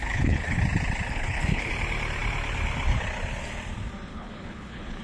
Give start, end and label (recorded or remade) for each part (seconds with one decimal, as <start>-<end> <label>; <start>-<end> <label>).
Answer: 0.0-0.6 remade; 0.6-1.1 recorded; 1.1-1.7 remade; 1.7-4.1 recorded; 4.1-5.0 remade